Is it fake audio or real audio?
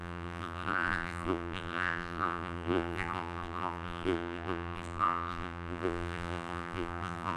fake